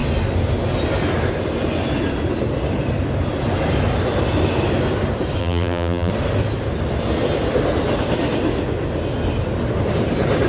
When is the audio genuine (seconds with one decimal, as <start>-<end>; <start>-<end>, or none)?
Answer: 0.0-5.4; 6.1-10.5